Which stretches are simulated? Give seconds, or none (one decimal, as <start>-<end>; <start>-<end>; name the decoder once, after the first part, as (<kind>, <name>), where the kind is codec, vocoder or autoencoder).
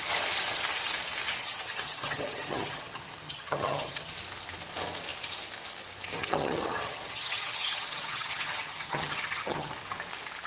1.4-4.1 (vocoder, HiFi-GAN); 6.2-9.7